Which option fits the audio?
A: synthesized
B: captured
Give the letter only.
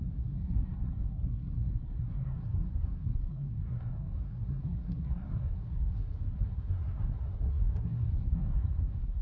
A